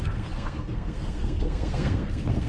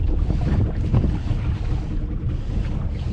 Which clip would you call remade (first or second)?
first